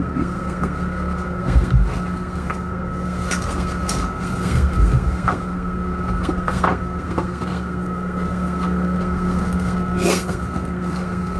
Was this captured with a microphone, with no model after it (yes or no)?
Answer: no